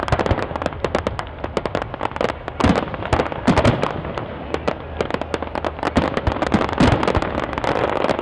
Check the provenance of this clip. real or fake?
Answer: real